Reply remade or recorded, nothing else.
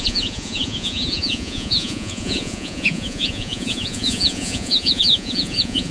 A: remade